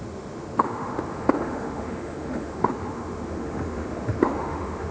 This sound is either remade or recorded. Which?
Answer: remade